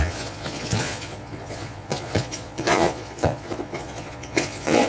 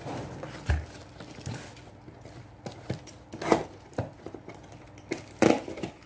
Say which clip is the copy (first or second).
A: first